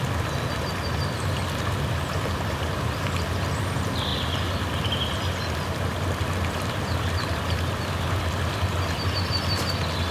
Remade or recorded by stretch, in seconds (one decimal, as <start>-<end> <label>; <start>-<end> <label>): 0.0-10.1 recorded